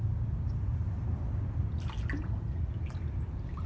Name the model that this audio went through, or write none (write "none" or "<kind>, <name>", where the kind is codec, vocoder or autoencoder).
none